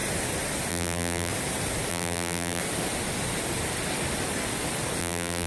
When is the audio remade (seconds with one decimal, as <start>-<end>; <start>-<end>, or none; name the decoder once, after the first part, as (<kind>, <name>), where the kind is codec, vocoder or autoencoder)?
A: 0.7-1.3 (vocoder, BigVGAN v2); 1.9-2.6; 5.0-5.5